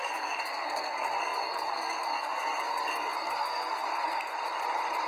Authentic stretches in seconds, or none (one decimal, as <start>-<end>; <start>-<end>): 4.3-5.1